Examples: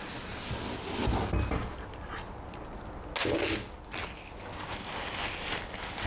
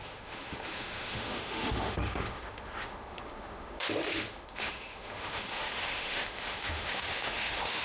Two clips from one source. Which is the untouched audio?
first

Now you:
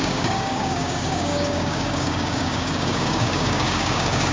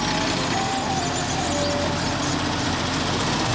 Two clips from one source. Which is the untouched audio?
second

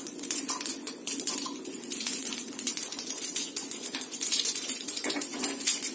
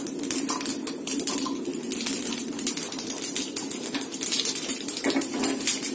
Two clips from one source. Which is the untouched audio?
second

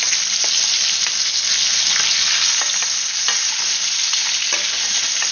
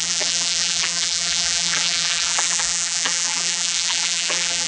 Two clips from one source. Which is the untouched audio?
first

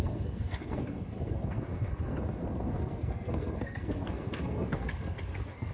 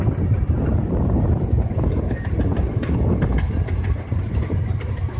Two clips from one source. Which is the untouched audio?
second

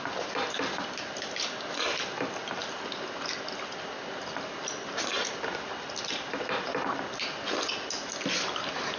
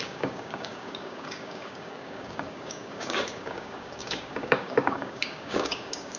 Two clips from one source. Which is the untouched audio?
first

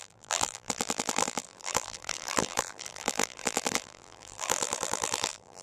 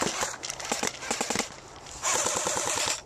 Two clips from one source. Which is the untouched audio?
second